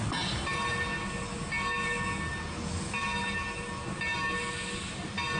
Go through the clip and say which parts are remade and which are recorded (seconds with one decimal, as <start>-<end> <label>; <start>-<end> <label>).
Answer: 0.0-5.4 recorded